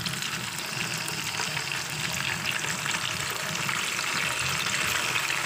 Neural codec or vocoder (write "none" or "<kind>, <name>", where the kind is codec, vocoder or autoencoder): none